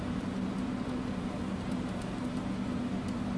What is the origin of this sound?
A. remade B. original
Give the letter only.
B